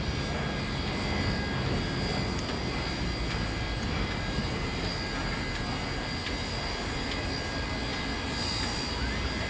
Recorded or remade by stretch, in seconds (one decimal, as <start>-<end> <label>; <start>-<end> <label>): 0.0-9.5 recorded